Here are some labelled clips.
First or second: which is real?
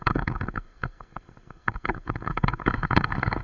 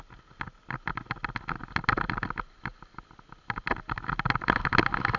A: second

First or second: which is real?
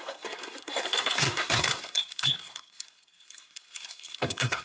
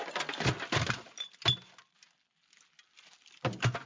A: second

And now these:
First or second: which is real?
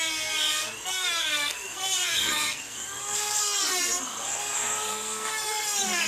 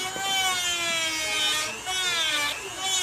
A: second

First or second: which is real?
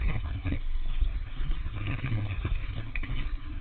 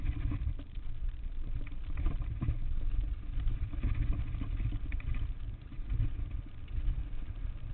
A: second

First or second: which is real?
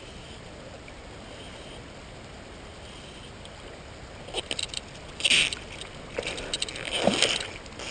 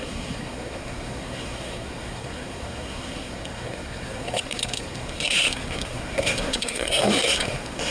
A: first